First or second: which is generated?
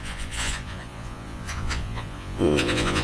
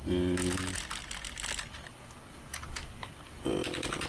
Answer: first